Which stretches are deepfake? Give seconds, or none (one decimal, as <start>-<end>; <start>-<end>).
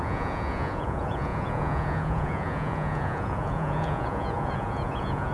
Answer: 0.0-5.3